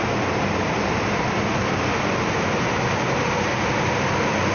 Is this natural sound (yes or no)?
yes